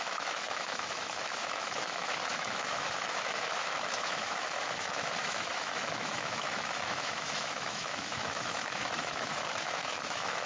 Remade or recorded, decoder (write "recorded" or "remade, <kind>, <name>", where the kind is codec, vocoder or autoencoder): remade, autoencoder, DAC-VAE